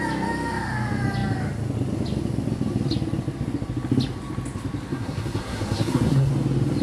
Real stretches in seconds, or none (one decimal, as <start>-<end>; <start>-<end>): 0.0-4.9; 6.3-6.8